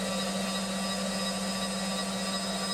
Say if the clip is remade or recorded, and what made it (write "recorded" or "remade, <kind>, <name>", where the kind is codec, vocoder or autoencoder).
recorded